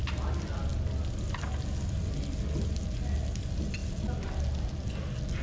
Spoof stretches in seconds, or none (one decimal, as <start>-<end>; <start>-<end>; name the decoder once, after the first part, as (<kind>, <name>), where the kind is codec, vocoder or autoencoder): none